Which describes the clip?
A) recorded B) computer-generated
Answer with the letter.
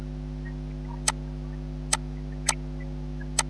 A